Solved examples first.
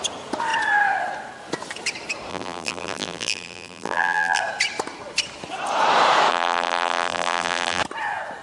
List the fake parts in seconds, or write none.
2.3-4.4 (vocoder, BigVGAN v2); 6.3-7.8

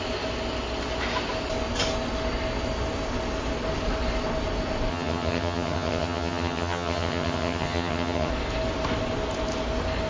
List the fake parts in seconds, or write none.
4.9-8.3 (vocoder, HiFi-GAN)